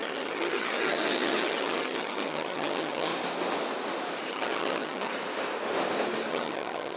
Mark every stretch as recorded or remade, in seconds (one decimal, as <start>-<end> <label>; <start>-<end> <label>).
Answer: 0.0-3.1 remade; 3.1-4.3 recorded; 4.3-5.1 remade; 5.1-6.3 recorded; 6.3-7.0 remade